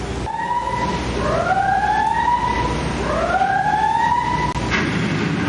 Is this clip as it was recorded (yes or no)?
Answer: yes